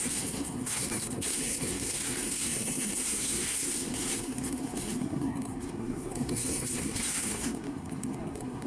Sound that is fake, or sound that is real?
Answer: fake